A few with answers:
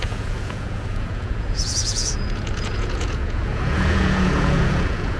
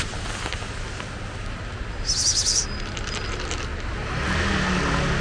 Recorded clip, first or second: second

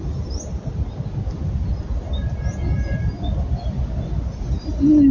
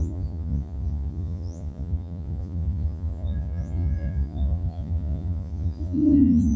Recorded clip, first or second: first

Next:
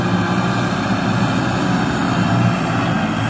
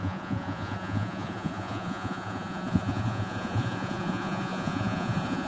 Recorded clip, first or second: first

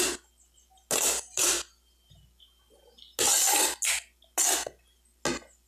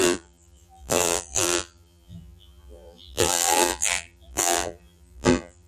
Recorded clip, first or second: first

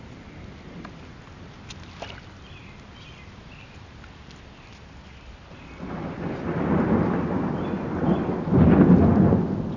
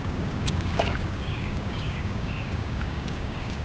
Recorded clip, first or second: first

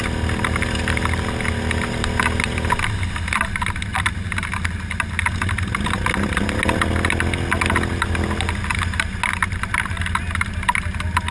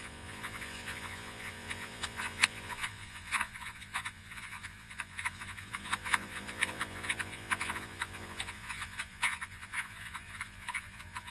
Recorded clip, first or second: first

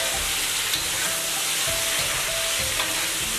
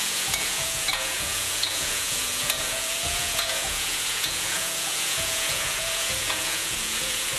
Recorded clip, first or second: first